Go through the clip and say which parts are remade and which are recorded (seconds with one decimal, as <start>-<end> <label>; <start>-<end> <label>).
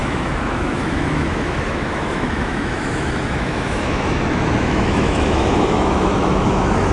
0.0-6.9 remade